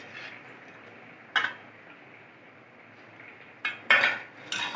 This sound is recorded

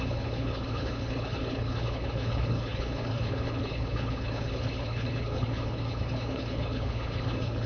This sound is remade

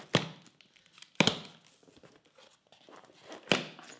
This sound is recorded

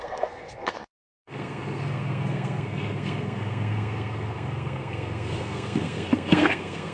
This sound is remade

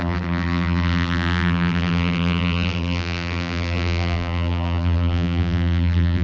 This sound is remade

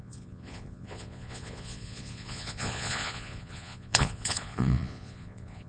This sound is remade